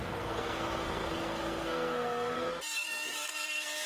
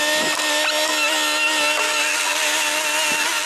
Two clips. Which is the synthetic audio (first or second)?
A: first